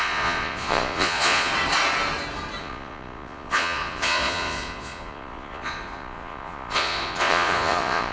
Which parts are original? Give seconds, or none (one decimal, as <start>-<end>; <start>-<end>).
1.5-2.6